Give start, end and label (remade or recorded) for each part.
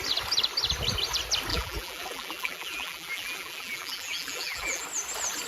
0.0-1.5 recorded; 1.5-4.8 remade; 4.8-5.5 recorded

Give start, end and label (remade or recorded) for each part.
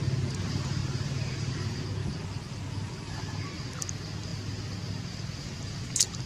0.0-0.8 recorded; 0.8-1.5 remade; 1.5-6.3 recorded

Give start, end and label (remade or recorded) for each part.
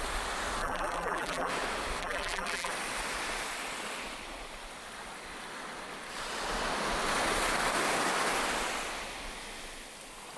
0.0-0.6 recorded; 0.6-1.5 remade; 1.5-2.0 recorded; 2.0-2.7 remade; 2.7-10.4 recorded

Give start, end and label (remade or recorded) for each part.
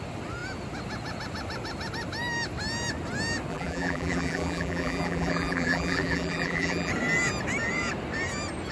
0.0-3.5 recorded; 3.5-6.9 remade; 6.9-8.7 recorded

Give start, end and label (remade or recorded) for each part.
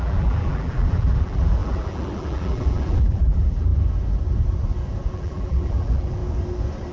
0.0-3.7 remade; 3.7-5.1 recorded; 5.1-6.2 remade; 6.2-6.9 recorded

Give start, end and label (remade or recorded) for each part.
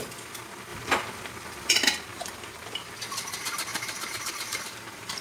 0.0-2.1 recorded; 2.1-2.9 remade; 2.9-3.7 recorded; 3.7-5.2 remade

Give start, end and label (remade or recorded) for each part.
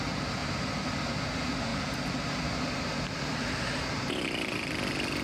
0.0-1.7 recorded; 1.7-4.8 remade; 4.8-5.2 recorded